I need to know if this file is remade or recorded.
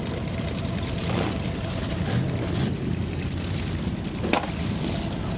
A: recorded